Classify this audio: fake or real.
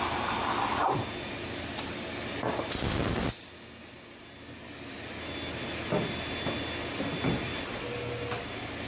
real